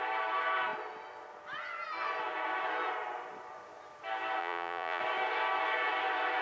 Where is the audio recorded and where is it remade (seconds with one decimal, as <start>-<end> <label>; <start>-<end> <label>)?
0.0-4.4 recorded; 4.4-5.0 remade; 5.0-6.4 recorded